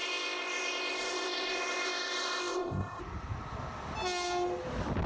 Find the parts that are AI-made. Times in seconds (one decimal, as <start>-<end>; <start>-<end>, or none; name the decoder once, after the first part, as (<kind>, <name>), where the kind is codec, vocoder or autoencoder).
0.0-3.0 (codec, ZipCodec)